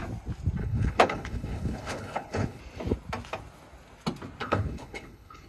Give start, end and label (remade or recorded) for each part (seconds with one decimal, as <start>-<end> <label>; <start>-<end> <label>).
0.0-0.6 recorded; 0.6-2.6 remade; 2.6-4.4 recorded; 4.4-5.5 remade